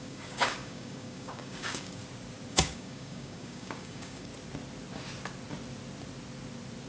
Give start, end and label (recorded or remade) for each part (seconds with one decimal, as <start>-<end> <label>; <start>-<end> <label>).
0.0-2.0 remade; 2.0-2.5 recorded; 2.5-4.3 remade; 4.3-6.9 recorded